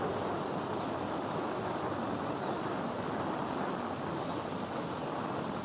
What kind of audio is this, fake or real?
real